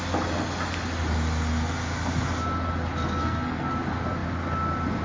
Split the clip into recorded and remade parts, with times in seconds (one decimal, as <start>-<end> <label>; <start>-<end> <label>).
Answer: 0.0-3.2 recorded; 3.2-3.7 remade; 3.7-5.0 recorded